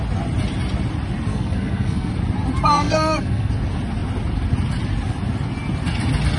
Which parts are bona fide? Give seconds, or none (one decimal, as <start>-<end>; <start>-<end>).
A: 0.0-1.3; 2.1-2.6; 3.5-6.4